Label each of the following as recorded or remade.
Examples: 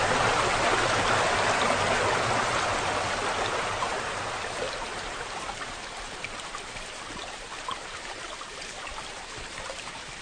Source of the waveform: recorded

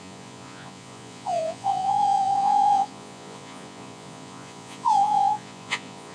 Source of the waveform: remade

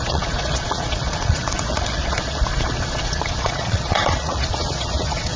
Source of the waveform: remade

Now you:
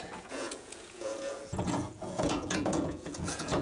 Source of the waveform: remade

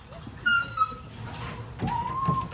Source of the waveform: recorded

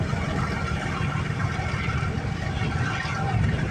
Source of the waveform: recorded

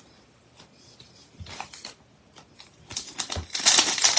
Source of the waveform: recorded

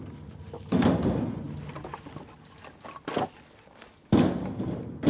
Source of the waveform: recorded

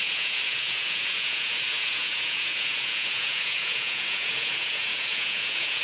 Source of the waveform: remade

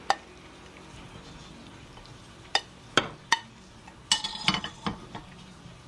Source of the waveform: recorded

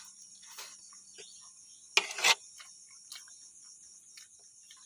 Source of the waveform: recorded